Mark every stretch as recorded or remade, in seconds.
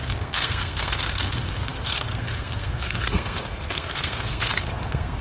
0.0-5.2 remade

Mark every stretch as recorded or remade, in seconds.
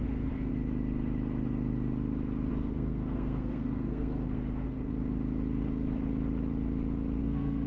0.0-0.5 remade; 0.5-2.5 recorded; 2.5-4.9 remade; 4.9-7.2 recorded; 7.2-7.7 remade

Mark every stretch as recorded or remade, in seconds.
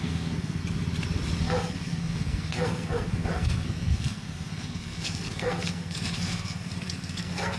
0.0-0.6 remade; 0.6-1.4 recorded; 1.4-7.6 remade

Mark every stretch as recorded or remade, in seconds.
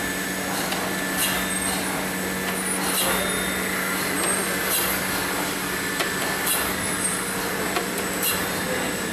0.0-9.1 recorded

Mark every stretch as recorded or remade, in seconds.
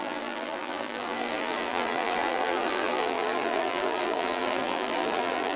0.0-5.6 remade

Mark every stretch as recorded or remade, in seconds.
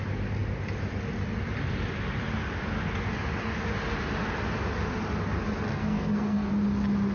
0.0-5.7 recorded; 5.7-6.5 remade; 6.5-7.1 recorded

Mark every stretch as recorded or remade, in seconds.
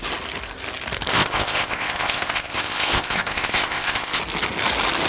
0.0-1.1 recorded; 1.1-4.2 remade; 4.2-5.1 recorded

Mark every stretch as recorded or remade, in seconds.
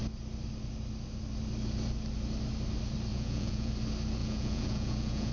0.0-3.1 recorded; 3.1-3.7 remade; 3.7-4.2 recorded; 4.2-5.3 remade